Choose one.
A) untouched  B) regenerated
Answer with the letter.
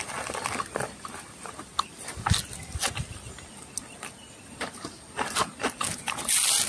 A